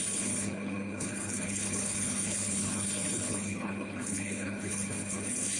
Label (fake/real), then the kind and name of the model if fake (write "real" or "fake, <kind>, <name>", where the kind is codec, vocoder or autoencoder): fake, codec, HILCodec